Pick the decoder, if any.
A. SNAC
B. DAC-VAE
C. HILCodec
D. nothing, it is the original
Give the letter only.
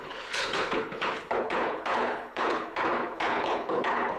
C